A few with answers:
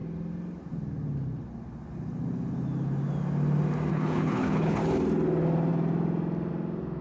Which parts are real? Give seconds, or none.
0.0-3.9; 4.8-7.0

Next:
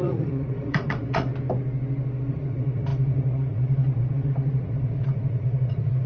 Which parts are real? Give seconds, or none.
1.3-2.3

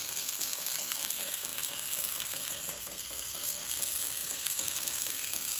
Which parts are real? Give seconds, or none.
none

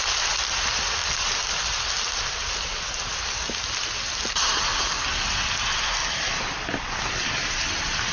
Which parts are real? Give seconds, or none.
0.0-8.1

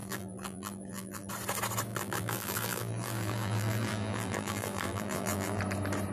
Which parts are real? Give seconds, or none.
1.3-1.9; 5.6-6.1

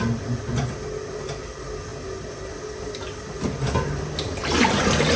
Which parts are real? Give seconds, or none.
0.0-5.2